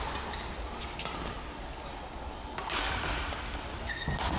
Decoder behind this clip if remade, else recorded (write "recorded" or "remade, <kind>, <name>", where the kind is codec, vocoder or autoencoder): recorded